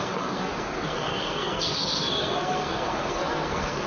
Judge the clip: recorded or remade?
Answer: remade